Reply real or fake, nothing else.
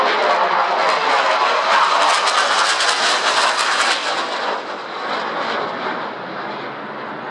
real